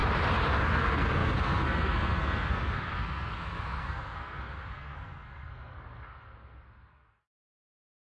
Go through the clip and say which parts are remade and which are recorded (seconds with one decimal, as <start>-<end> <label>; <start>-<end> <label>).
0.0-0.7 recorded; 0.7-8.0 remade